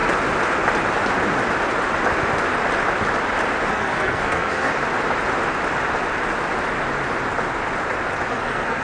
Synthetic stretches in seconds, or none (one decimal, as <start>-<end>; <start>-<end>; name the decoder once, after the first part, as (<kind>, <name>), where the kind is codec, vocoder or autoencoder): 3.7-4.7 (codec, SNAC); 8.3-8.8